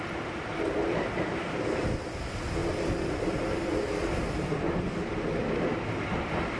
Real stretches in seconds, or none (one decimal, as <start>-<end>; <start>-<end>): 0.0-6.6